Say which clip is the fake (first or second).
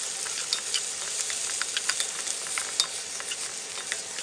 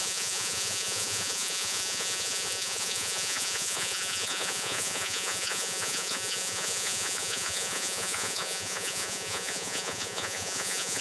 second